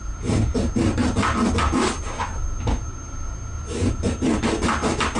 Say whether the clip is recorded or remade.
recorded